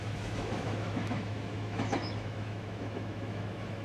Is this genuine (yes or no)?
no